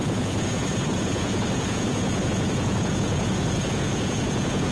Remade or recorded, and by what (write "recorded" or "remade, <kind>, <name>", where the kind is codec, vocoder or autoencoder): remade, vocoder, Vocos